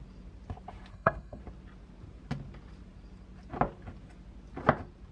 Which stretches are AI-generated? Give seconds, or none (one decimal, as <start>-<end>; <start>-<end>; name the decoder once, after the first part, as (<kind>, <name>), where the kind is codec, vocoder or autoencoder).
0.9-1.4 (codec, SNAC)